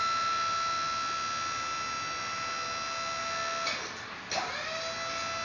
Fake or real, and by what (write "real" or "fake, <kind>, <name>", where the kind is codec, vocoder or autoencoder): real